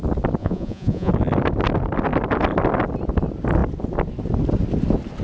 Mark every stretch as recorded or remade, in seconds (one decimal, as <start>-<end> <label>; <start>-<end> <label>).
0.0-0.4 recorded; 0.4-1.1 remade; 1.1-5.2 recorded